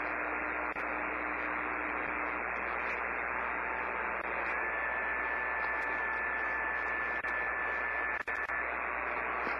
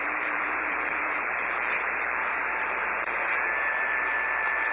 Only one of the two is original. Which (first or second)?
first